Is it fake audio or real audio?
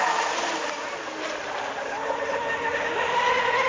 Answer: real